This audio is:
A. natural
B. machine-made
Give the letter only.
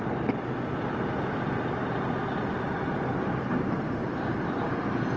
A